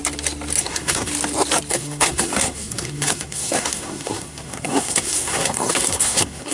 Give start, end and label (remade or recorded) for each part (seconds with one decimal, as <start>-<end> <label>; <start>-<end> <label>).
0.0-0.6 recorded; 0.6-1.1 remade; 1.1-1.7 recorded; 1.7-6.5 remade